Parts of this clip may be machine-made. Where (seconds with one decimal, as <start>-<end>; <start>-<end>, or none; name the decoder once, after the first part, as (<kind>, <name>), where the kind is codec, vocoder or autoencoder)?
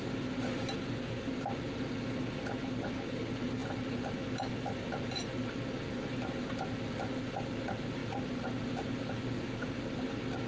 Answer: none